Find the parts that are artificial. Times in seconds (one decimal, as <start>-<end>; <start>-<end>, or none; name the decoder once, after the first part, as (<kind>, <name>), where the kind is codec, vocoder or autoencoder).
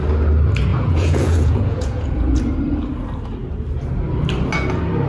0.7-2.4 (vocoder, Vocos)